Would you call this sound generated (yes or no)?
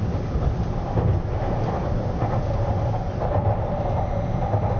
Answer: yes